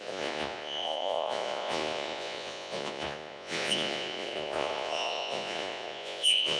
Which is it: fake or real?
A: fake